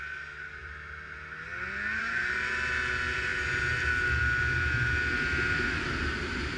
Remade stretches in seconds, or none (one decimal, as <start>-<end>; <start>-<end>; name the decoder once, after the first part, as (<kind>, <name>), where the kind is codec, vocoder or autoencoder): none